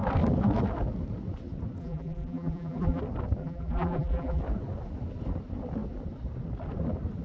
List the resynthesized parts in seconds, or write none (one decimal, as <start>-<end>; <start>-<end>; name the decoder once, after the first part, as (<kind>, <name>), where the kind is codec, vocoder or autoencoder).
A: 1.8-3.0 (vocoder, BigVGAN v2); 3.4-4.4